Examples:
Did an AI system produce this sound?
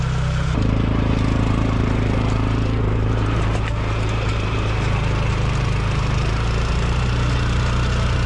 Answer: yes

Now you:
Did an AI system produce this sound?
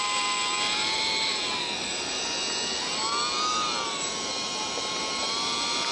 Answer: yes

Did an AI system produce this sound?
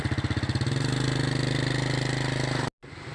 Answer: no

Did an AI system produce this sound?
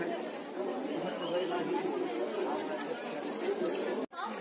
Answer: no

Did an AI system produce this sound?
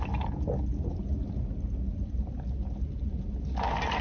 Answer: no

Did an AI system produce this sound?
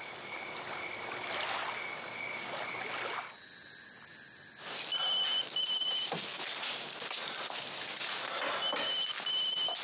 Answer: no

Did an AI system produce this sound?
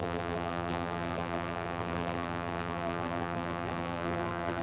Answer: yes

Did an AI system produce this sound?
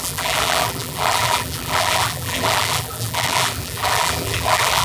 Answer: yes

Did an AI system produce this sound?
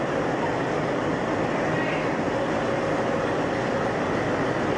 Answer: no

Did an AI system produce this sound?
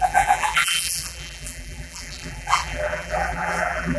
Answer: yes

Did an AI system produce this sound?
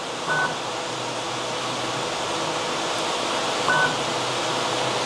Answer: no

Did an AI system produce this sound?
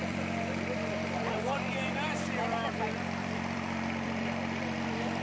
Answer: yes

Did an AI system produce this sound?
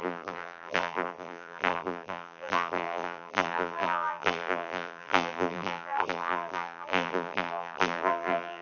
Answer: yes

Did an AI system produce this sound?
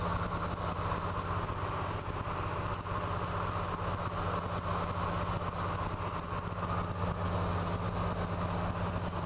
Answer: no